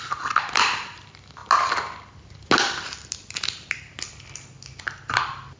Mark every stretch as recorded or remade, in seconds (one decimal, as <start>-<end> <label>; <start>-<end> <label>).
0.0-5.6 recorded